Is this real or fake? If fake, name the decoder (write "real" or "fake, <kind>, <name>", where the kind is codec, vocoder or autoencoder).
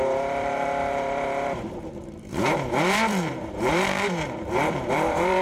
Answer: fake, vocoder, BigVGAN v2